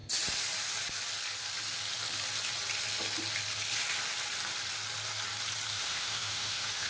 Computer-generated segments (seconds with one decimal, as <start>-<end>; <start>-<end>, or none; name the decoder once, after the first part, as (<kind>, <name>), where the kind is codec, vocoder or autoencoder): 5.7-6.9 (autoencoder, DAC-VAE)

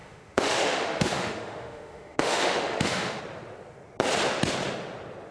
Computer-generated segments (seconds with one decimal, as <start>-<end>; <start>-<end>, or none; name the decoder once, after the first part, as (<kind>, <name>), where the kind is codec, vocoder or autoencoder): 0.0-3.2 (autoencoder, DAC-VAE)

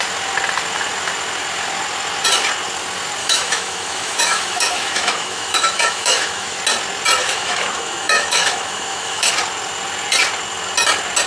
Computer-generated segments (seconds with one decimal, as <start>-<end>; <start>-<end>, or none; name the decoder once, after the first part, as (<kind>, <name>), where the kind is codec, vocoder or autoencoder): 3.2-6.6 (autoencoder, DAC-VAE); 7.2-9.3